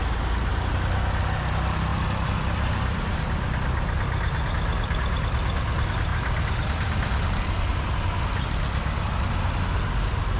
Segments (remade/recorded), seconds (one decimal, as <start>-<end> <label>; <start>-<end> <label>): 0.0-1.9 recorded; 1.9-3.2 remade; 3.2-6.1 recorded; 6.1-7.9 remade; 7.9-10.4 recorded